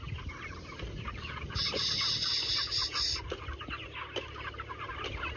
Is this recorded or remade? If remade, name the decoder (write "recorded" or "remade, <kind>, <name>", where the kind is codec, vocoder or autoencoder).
recorded